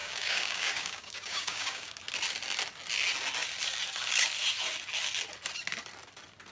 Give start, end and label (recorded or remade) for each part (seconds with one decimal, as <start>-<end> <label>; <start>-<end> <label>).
0.0-2.0 remade; 2.0-6.5 recorded